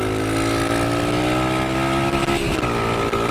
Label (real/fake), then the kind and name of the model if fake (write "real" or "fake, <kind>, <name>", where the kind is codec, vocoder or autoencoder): real